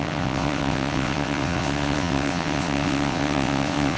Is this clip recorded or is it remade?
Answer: remade